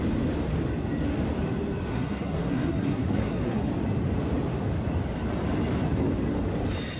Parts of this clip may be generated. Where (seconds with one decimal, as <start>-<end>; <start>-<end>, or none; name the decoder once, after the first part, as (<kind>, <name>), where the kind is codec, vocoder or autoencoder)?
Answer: 1.9-3.7 (codec, SNAC)